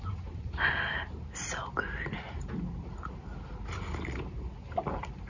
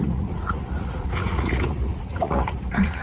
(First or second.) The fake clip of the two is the second